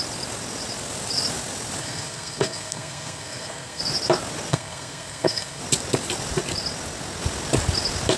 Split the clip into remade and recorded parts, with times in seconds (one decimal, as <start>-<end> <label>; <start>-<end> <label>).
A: 0.0-1.8 recorded; 1.8-3.8 remade; 3.8-4.5 recorded; 4.5-5.6 remade; 5.6-8.2 recorded